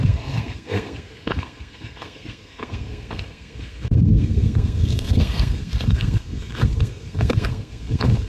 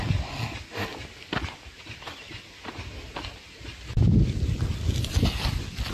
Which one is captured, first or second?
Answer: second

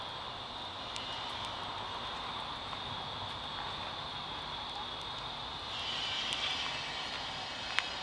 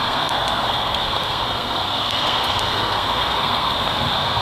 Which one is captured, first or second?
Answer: first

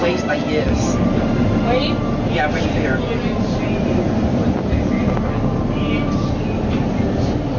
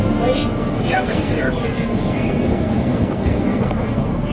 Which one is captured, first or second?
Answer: first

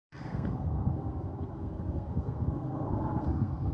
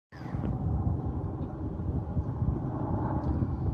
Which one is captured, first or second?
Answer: second